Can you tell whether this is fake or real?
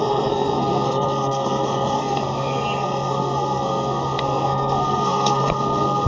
fake